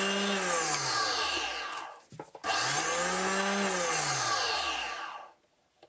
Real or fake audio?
real